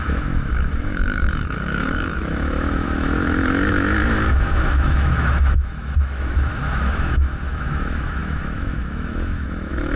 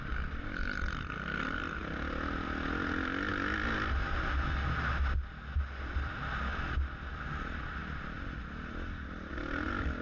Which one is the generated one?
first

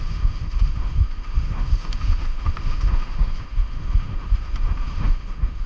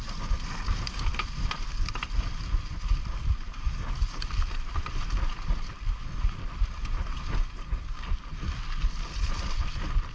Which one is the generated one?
first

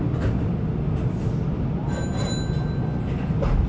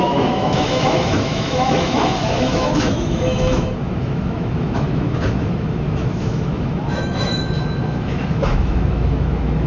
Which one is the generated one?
second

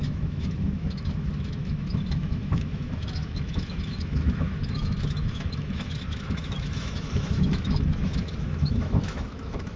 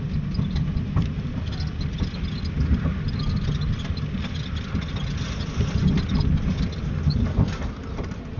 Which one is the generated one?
first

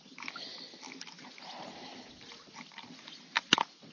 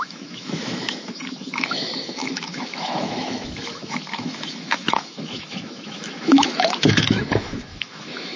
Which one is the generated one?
second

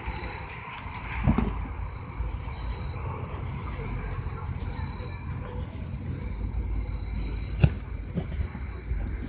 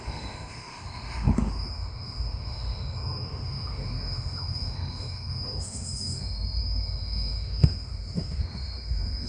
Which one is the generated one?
second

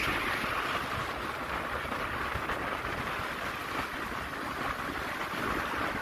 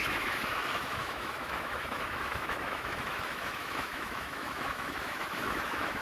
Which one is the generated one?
second